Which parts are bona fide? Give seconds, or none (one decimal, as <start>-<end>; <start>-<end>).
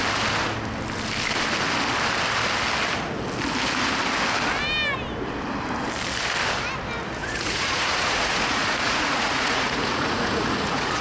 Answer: 0.0-7.2